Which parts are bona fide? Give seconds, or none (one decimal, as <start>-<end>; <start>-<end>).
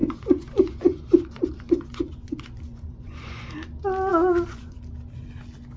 3.5-4.1; 4.8-5.8